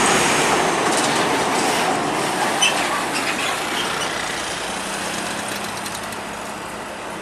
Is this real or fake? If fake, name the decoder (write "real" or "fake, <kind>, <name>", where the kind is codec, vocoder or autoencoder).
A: real